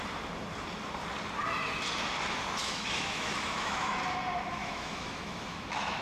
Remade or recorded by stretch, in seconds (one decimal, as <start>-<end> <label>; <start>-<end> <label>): 0.0-2.6 recorded; 2.6-4.0 remade; 4.0-4.6 recorded; 4.6-6.0 remade